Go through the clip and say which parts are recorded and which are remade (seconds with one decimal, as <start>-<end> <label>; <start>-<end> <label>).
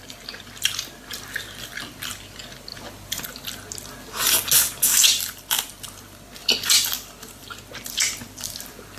0.0-6.4 recorded; 6.4-7.4 remade; 7.4-9.0 recorded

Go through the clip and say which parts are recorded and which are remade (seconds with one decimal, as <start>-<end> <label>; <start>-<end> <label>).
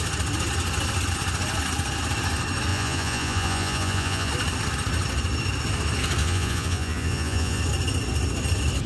0.0-2.7 recorded; 2.7-4.3 remade; 4.3-6.2 recorded; 6.2-7.6 remade; 7.6-8.9 recorded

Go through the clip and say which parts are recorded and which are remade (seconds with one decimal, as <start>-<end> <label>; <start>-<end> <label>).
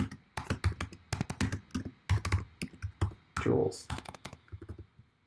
0.0-3.6 recorded; 3.6-4.7 remade; 4.7-5.3 recorded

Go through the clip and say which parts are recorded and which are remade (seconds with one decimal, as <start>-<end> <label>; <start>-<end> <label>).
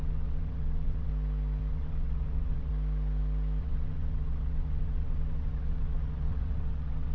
0.0-1.1 remade; 1.1-1.7 recorded; 1.7-2.7 remade; 2.7-3.6 recorded; 3.6-7.1 remade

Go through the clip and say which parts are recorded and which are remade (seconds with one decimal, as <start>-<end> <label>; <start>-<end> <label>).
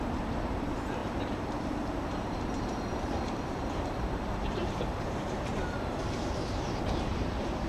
0.0-6.4 remade; 6.4-7.0 recorded; 7.0-7.7 remade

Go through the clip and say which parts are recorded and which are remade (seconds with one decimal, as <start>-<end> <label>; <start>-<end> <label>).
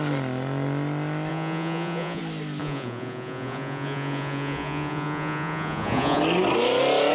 0.0-1.3 recorded; 1.3-2.2 remade; 2.2-2.6 recorded; 2.6-6.2 remade; 6.2-7.1 recorded